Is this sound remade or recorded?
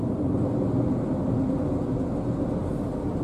recorded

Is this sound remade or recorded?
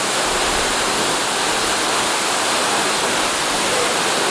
recorded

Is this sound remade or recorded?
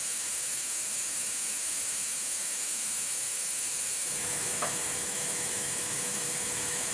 remade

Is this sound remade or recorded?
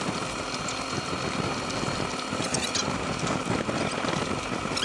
recorded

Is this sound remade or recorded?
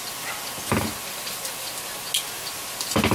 recorded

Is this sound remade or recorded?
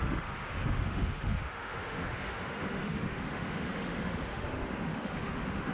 remade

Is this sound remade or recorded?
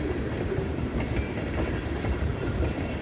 recorded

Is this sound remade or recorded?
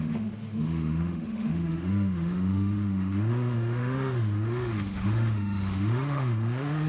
remade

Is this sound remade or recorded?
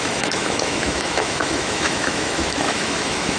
remade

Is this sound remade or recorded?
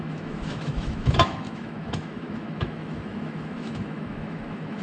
remade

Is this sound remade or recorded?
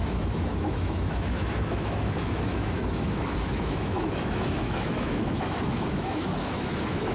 remade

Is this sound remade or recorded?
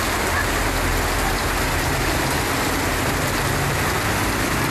recorded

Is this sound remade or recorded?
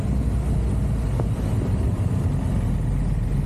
recorded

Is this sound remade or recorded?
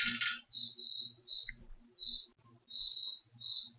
recorded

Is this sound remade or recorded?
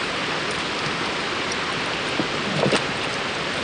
recorded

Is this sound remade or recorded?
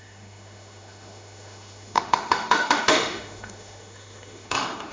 remade